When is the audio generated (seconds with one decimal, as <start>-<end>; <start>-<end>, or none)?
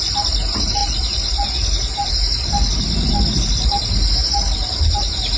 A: none